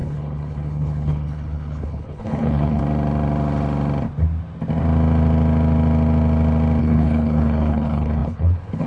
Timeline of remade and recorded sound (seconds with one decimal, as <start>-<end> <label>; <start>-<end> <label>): 0.0-2.8 remade; 2.8-6.8 recorded; 6.8-8.9 remade